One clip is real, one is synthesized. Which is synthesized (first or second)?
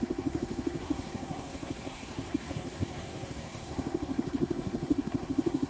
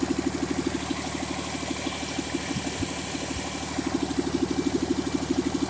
first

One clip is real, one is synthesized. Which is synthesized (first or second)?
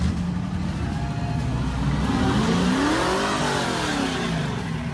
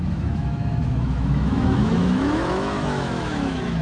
second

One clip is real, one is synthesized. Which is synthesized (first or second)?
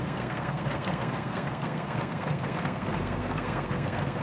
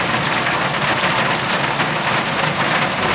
first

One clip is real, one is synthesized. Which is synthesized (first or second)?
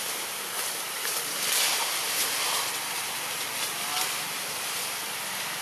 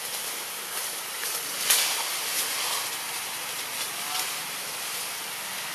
first